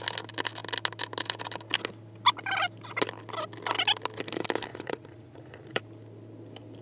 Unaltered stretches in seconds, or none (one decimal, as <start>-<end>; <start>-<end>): 0.0-4.7; 5.8-6.8